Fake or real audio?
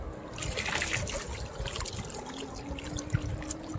real